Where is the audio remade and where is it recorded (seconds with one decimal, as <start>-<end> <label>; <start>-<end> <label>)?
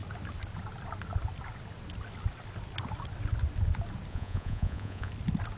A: 0.0-4.1 recorded; 4.1-5.1 remade; 5.1-5.6 recorded